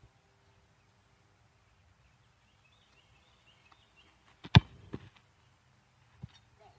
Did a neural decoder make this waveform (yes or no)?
no